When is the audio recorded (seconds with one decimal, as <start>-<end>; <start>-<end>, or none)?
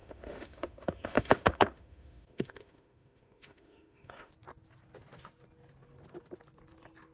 4.3-7.1